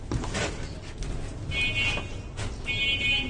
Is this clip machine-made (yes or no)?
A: no